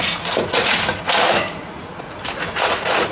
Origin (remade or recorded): remade